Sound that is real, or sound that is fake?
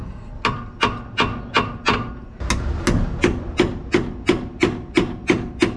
real